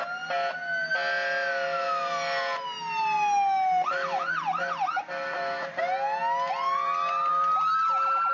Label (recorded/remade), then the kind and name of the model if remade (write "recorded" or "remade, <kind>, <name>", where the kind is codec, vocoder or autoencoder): recorded